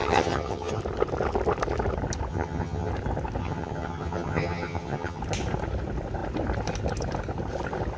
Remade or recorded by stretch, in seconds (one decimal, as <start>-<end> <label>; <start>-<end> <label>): 0.0-0.8 remade; 0.8-2.3 recorded; 2.3-2.9 remade; 2.9-3.4 recorded; 3.4-5.2 remade; 5.2-8.0 recorded